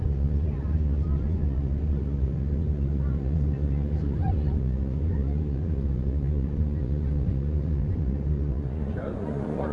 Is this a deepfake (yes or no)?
yes